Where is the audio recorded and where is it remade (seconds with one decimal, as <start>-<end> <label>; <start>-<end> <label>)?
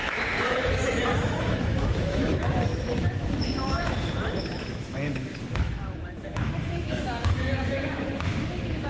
0.0-8.9 remade